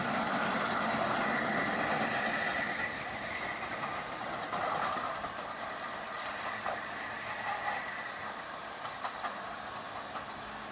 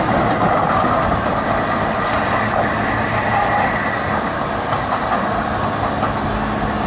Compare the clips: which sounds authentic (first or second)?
second